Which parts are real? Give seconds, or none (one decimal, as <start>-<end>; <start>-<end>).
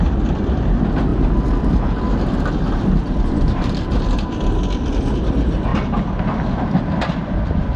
1.1-2.5; 5.7-6.8